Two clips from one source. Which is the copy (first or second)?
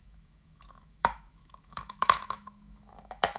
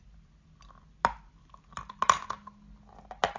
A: first